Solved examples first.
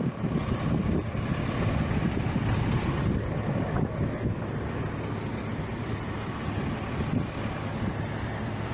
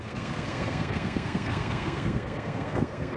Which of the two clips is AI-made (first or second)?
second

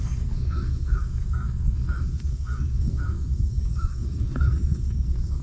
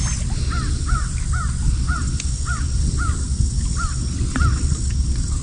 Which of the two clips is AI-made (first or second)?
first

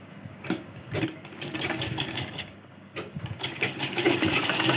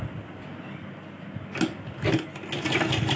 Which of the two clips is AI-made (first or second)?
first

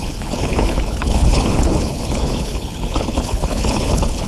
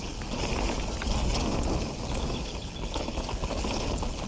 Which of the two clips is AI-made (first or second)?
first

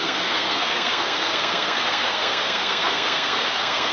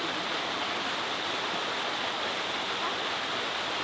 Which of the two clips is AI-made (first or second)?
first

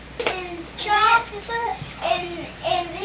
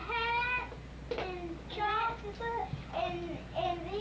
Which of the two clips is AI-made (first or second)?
first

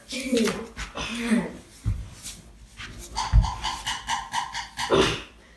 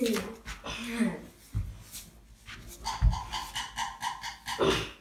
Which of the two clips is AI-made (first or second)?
first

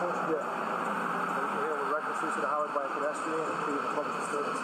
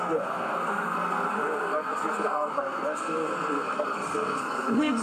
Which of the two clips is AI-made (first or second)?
second